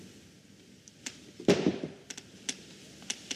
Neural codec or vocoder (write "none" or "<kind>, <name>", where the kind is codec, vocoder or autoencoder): none